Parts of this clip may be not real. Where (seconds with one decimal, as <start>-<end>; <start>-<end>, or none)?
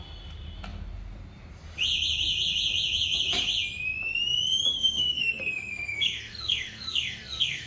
4.7-7.7